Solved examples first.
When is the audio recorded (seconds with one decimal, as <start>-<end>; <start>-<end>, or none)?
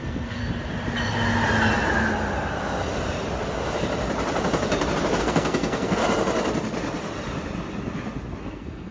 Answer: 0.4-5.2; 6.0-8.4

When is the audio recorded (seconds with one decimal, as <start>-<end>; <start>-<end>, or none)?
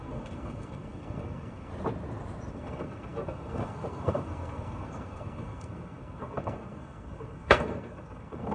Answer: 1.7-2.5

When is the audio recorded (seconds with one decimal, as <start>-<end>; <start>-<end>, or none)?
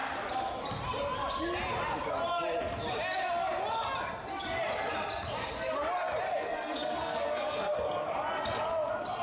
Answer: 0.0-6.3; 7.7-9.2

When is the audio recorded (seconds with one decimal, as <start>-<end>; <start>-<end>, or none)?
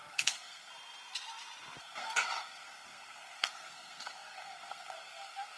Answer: 0.7-1.8